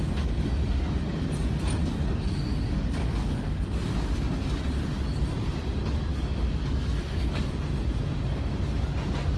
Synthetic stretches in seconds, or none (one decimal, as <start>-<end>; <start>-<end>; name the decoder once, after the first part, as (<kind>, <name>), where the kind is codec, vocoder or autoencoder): 1.8-4.8 (codec, DAC); 6.1-7.5

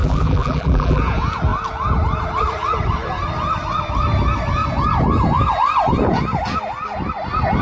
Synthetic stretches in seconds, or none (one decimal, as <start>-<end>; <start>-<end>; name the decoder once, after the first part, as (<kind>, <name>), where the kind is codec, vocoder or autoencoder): 0.0-1.0 (vocoder, BigVGAN v2)

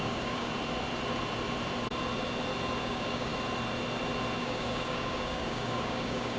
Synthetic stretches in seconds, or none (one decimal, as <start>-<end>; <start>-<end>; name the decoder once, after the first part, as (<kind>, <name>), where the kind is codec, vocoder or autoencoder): 0.0-0.5 (codec, DAC); 2.8-3.3; 4.4-6.4

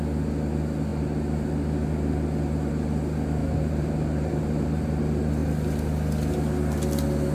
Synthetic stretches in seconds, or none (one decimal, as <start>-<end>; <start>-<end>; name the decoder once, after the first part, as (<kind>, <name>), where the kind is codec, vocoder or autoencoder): 3.4-5.0 (vocoder, BigVGAN v2)

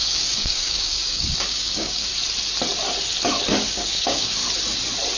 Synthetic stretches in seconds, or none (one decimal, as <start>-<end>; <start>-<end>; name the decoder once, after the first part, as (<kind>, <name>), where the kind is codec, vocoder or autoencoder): 0.0-2.1 (codec, DAC); 3.6-4.4

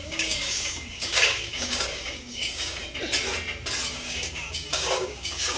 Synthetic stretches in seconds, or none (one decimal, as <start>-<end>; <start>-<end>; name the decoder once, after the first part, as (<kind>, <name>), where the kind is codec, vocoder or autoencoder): 0.0-2.8 (codec, DAC); 3.9-5.6